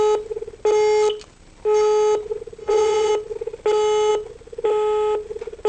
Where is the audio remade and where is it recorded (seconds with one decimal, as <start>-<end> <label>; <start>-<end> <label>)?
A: 0.0-2.6 recorded; 2.6-3.1 remade; 3.1-5.7 recorded